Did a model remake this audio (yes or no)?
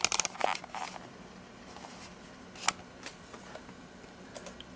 no